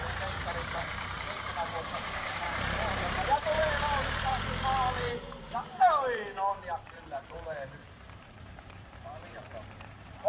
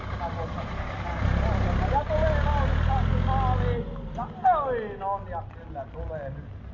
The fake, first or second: first